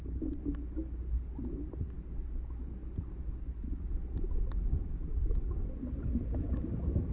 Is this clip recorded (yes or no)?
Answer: yes